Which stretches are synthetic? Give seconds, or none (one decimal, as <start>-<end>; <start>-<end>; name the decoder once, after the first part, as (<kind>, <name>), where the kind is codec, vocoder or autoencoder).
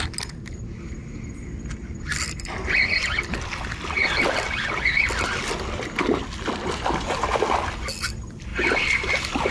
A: none